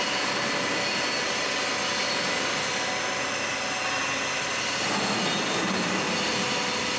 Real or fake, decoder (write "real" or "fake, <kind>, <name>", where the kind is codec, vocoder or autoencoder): real